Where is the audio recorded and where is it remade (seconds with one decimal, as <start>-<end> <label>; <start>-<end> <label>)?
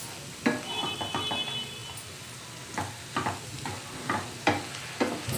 0.0-5.4 recorded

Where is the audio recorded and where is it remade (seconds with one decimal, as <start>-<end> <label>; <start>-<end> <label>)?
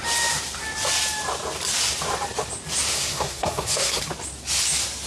0.0-2.9 recorded; 2.9-4.0 remade; 4.0-5.1 recorded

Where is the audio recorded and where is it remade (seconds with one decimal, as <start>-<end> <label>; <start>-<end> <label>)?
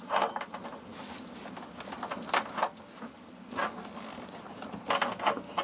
0.0-5.6 recorded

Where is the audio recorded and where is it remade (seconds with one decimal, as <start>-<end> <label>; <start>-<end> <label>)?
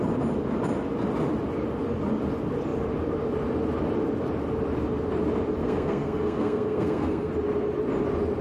0.0-5.6 recorded; 5.6-7.3 remade; 7.3-8.4 recorded